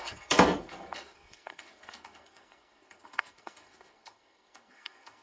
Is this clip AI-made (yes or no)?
yes